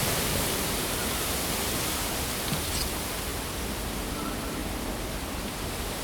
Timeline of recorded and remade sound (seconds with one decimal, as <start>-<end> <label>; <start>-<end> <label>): 0.0-6.0 recorded